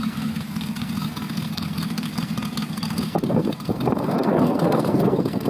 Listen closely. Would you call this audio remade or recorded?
remade